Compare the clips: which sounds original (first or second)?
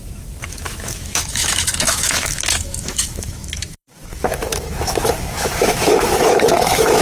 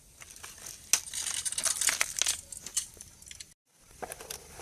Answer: second